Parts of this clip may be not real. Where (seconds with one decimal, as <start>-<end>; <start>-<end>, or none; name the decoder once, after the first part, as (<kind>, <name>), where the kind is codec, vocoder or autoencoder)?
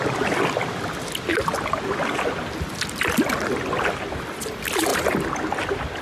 4.9-5.6 (vocoder, BigVGAN v2)